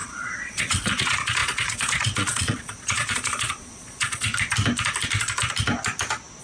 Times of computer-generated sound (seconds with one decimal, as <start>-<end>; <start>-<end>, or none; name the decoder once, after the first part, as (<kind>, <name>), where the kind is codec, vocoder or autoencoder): 0.0-4.3 (vocoder, Vocos)